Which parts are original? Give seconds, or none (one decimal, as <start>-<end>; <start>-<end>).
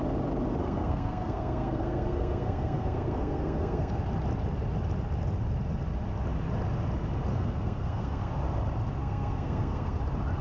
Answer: 0.0-0.6; 4.0-7.3; 8.3-9.0; 10.0-10.4